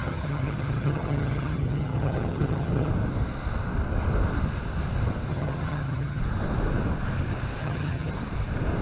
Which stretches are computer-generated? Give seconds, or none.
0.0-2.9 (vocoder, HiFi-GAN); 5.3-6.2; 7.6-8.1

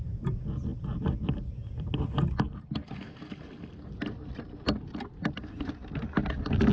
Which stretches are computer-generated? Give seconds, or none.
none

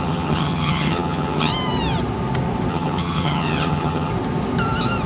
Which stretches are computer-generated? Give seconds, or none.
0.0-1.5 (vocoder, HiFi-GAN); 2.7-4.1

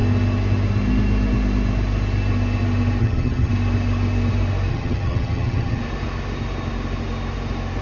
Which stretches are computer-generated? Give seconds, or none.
3.0-3.5 (vocoder, HiFi-GAN); 4.7-5.8

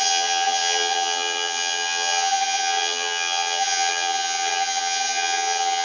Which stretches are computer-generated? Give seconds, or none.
0.0-5.8 (vocoder, HiFi-GAN)

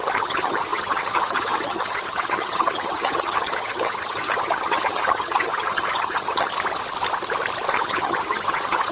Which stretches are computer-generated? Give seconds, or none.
0.0-6.5 (vocoder, HiFi-GAN); 7.7-8.9

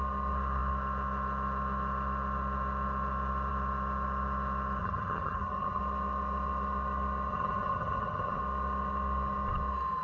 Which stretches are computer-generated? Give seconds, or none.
4.8-5.8 (vocoder, HiFi-GAN); 7.3-8.4